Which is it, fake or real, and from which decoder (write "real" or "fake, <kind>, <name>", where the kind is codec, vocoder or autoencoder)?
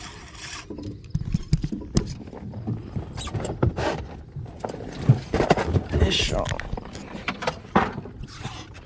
real